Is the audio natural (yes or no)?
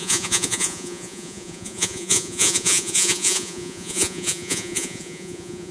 no